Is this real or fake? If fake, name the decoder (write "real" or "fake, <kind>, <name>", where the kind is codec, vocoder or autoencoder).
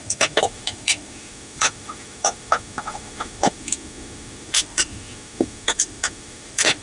fake, autoencoder, DAC-VAE